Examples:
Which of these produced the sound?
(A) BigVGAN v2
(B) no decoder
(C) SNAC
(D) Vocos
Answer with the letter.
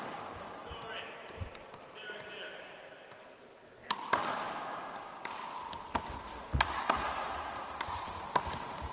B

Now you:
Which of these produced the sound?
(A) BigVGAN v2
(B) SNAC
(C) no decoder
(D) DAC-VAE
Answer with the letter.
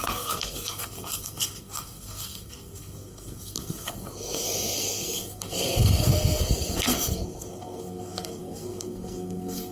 B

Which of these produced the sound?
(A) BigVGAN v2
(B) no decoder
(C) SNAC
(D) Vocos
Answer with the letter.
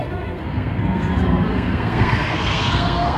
C